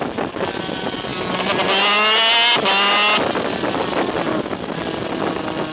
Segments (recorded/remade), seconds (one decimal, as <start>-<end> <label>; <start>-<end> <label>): 0.0-5.7 recorded